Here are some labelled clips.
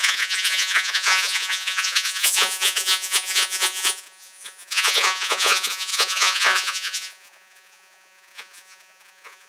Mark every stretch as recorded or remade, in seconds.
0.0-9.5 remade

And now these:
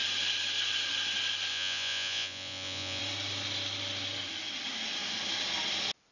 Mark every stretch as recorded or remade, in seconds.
0.0-1.5 recorded; 1.5-3.0 remade; 3.0-6.1 recorded

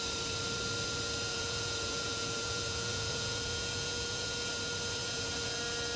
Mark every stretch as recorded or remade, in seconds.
0.0-1.3 recorded; 1.3-4.5 remade; 4.5-5.0 recorded; 5.0-5.6 remade; 5.6-6.0 recorded

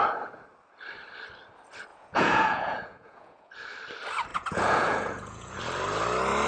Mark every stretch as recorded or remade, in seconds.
0.0-1.9 recorded; 1.9-3.5 remade; 3.5-4.3 recorded; 4.3-5.6 remade; 5.6-6.5 recorded